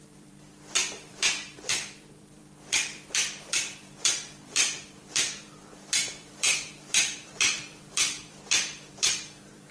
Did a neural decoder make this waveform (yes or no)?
yes